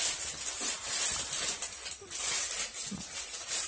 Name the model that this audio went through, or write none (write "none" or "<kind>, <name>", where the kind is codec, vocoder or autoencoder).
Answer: none